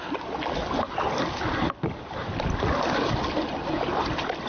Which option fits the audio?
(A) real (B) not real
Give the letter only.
A